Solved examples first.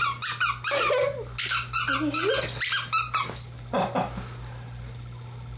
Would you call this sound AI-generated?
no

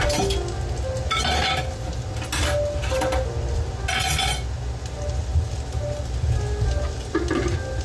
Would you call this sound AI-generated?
no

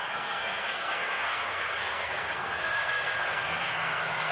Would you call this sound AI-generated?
yes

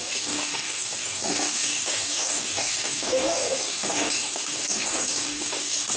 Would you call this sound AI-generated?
yes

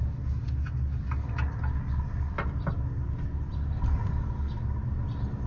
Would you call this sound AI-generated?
no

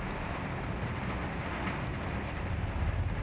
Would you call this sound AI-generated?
no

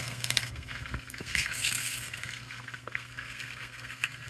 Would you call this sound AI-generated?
yes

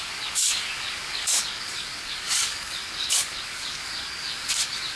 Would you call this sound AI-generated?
yes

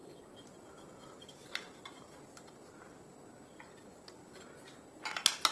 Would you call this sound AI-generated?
no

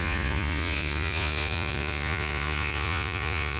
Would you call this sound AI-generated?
yes